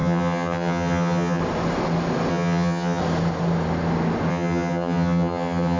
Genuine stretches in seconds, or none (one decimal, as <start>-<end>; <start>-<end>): 1.4-2.3; 3.0-4.3